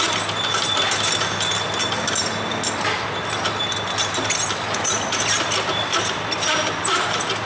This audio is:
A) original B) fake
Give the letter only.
A